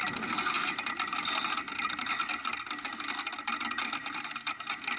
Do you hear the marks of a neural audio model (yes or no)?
no